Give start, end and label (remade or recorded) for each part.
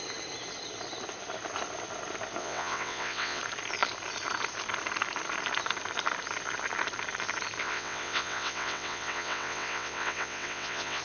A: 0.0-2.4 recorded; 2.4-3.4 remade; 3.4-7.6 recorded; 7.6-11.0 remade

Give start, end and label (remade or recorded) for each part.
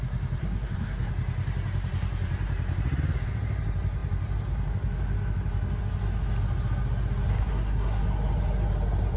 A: 0.0-0.4 recorded; 0.4-1.1 remade; 1.1-7.3 recorded; 7.3-8.0 remade; 8.0-9.2 recorded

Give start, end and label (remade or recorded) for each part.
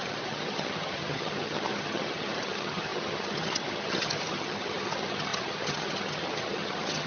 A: 0.0-7.1 remade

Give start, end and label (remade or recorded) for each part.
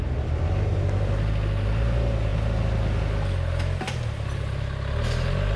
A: 0.0-5.6 recorded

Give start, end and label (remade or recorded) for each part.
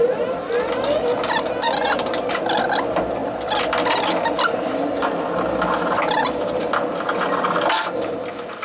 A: 0.0-8.6 recorded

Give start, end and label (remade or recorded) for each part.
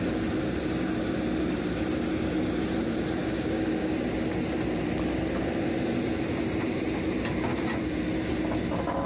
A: 0.0-3.2 recorded; 3.2-3.9 remade; 3.9-9.1 recorded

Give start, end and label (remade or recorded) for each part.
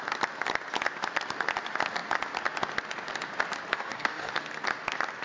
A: 0.0-3.7 recorded; 3.7-4.3 remade; 4.3-5.2 recorded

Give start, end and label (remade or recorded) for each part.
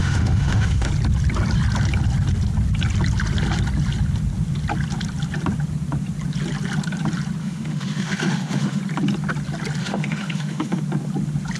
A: 0.0-0.9 remade; 0.9-7.4 recorded; 7.4-8.8 remade; 8.8-9.8 recorded; 9.8-10.8 remade; 10.8-11.6 recorded